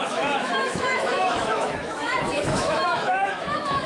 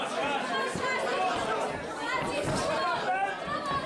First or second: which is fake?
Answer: first